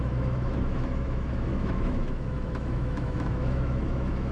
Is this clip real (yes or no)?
no